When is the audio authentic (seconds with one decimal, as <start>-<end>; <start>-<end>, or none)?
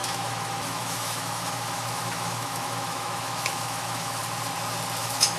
4.2-5.0